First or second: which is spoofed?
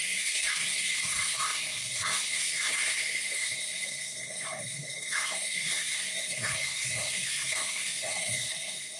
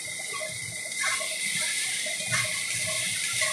first